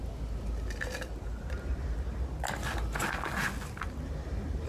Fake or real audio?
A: real